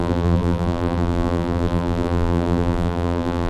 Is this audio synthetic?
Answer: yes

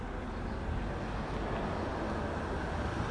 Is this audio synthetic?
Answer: no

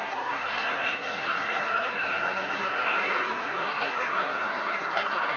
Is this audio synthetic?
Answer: yes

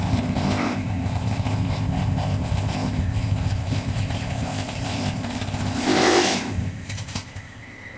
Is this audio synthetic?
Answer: yes